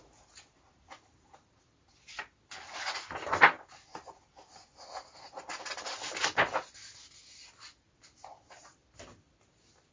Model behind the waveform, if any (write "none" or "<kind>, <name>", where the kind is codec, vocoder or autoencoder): none